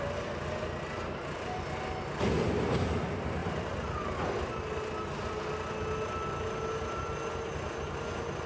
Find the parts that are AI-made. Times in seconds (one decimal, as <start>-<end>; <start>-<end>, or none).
none